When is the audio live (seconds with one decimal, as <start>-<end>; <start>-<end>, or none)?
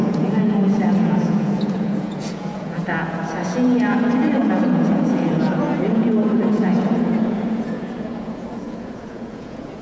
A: none